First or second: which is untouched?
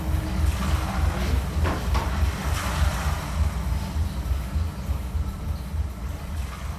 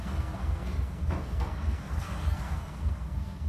first